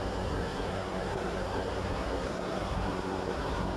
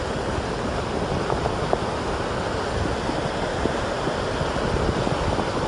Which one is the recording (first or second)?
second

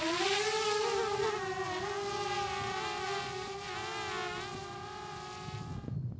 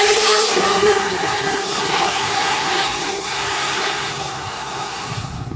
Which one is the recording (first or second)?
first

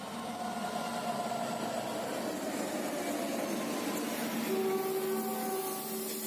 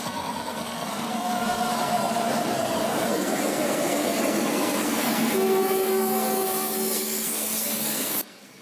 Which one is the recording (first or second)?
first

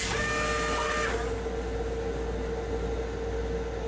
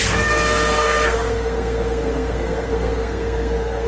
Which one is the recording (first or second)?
first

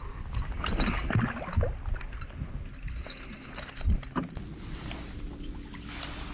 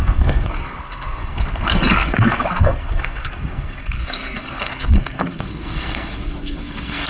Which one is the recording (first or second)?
first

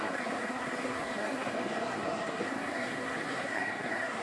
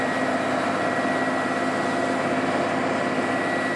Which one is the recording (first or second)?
second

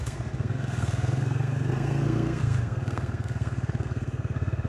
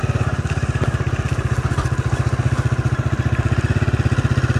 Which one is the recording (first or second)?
second